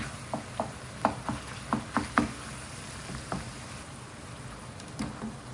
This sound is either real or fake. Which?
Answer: real